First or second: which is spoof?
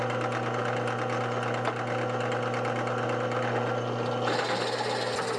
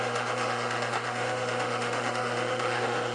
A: second